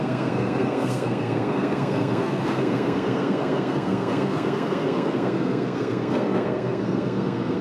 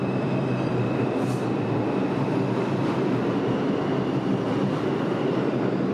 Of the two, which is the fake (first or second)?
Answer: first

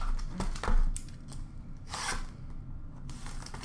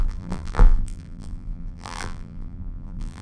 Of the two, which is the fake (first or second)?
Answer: second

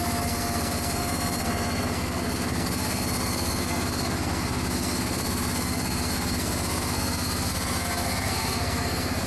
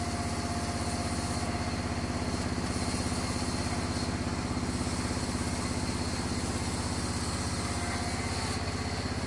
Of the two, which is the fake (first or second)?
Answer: first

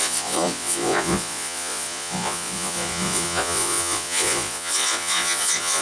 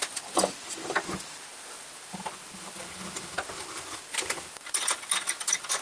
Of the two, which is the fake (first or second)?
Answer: first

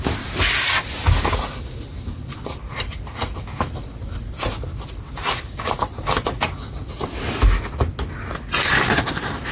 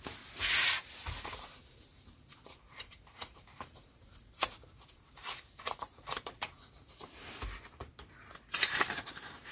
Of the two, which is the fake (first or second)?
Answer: second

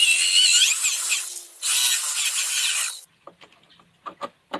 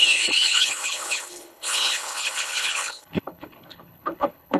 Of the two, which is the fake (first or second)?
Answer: second